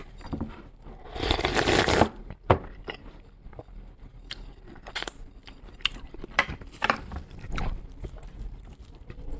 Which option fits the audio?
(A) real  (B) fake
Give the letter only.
B